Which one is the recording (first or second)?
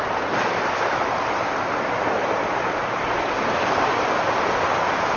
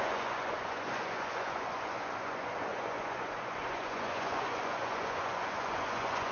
first